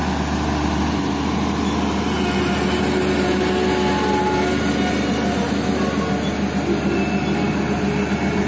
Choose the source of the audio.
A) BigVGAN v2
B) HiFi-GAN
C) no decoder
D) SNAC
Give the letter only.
C